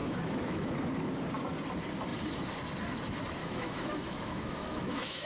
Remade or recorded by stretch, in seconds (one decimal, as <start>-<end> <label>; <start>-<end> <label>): 0.0-0.7 remade; 0.7-3.4 recorded; 3.4-5.3 remade